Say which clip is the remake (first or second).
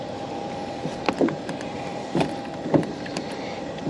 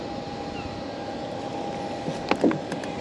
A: first